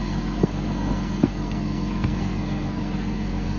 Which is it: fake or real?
fake